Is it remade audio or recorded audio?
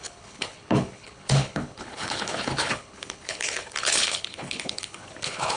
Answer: remade